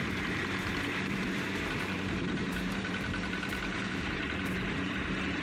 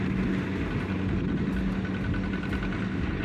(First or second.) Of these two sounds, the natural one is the second